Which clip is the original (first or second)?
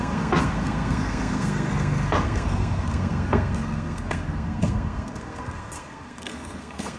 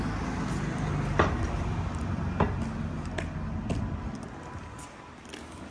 second